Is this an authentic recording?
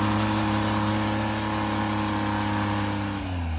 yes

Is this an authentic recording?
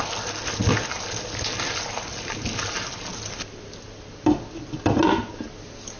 yes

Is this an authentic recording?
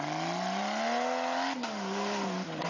yes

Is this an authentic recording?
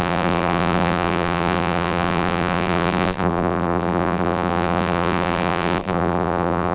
no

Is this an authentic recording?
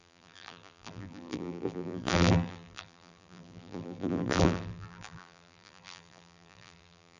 no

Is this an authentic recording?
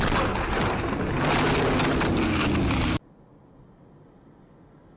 yes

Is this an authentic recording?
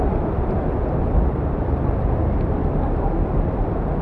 no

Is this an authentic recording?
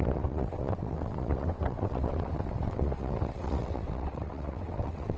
no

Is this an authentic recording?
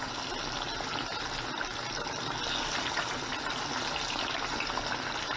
yes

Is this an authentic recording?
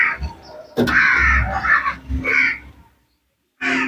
yes